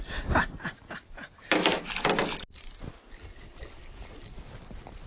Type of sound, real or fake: real